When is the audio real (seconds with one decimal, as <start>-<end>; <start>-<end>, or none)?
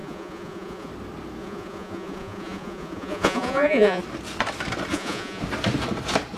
0.9-1.4; 4.0-4.9; 5.4-6.4